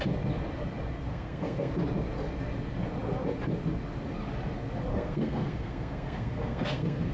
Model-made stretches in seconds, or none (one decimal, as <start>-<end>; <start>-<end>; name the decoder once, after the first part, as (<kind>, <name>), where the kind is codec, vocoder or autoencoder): 1.1-1.7 (codec, SNAC); 4.9-7.1